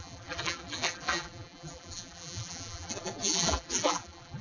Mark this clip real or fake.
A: fake